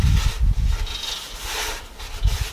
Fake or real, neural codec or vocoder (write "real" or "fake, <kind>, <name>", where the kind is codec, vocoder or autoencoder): real